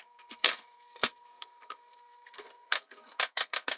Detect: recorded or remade remade